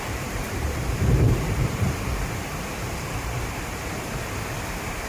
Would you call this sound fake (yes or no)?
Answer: yes